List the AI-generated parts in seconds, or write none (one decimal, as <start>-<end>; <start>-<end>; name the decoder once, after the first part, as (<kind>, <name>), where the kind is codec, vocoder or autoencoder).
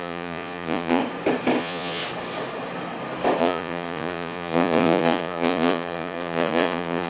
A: 0.0-1.0 (vocoder, Vocos); 1.6-2.0; 3.4-7.1